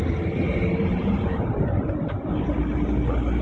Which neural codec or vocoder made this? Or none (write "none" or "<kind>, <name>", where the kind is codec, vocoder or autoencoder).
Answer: none